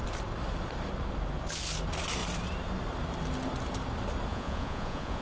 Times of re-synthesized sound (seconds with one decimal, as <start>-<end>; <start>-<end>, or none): 4.3-5.2